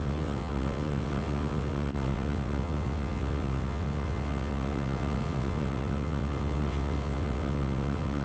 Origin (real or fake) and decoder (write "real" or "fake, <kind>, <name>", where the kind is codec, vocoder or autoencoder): fake, vocoder, WaveNeXt